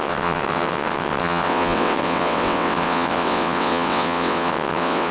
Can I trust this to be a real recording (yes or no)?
no